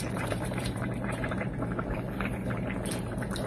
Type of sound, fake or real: fake